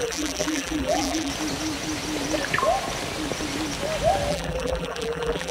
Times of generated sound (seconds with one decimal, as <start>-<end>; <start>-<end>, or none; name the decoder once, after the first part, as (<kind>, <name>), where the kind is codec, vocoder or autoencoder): 0.0-1.3 (vocoder, BigVGAN v2); 4.3-5.5